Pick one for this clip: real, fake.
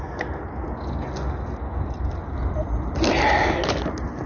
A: real